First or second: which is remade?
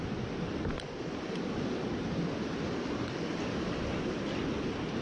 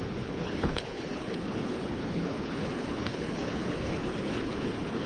second